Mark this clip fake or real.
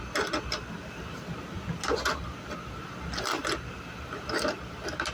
real